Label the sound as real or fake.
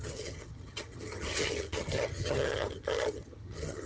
fake